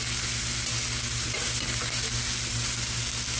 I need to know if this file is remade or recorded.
recorded